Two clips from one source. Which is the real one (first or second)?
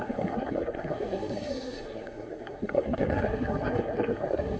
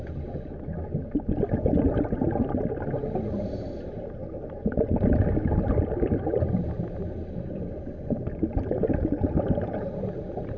second